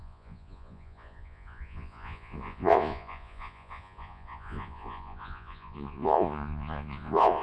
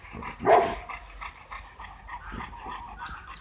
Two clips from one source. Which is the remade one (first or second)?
first